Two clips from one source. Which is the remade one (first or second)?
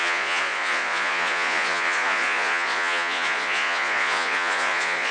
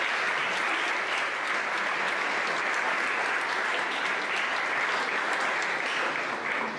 first